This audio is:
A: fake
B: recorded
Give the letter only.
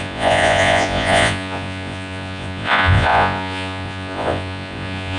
A